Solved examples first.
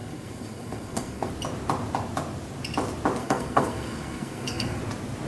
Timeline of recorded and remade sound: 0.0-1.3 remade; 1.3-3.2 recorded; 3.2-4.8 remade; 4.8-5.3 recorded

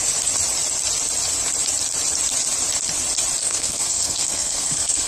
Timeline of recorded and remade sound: 0.0-3.4 recorded; 3.4-5.1 remade

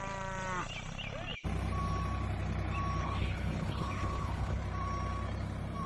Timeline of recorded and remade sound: 0.0-3.0 recorded; 3.0-4.6 remade; 4.6-5.9 recorded

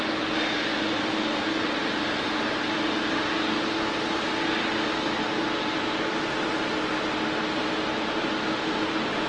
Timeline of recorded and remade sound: 0.0-9.3 recorded

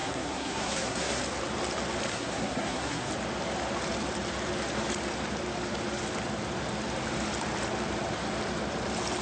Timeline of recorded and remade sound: 0.0-1.2 remade; 1.2-2.1 recorded; 2.1-3.1 remade; 3.1-9.2 recorded

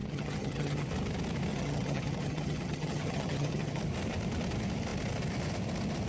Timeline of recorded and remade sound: 0.0-0.9 remade; 0.9-1.5 recorded; 1.5-3.8 remade; 3.8-6.1 recorded